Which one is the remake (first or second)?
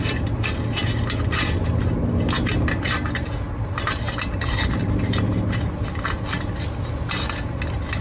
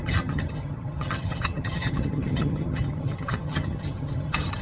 second